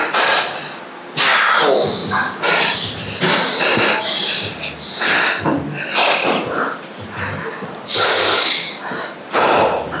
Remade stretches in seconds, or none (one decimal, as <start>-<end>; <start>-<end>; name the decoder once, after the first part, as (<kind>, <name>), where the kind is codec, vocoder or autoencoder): 7.9-8.8 (codec, DAC)